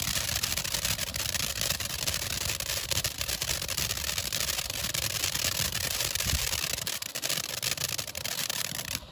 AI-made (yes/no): no